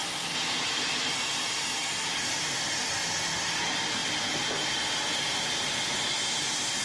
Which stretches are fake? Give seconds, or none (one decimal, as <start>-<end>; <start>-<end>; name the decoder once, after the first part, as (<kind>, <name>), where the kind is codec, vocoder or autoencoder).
none